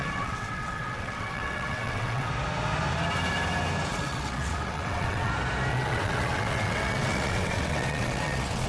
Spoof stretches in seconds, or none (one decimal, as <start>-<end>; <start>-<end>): 0.0-2.3; 3.9-5.3; 5.7-8.7